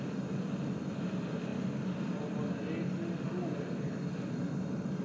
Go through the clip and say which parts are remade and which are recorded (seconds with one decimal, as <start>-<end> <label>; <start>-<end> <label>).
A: 0.0-5.0 recorded